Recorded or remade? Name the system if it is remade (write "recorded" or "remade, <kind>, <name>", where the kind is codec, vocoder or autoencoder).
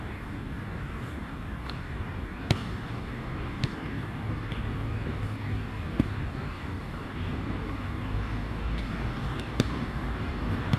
remade, codec, DAC